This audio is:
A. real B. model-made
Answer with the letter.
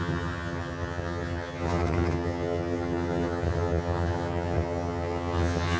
B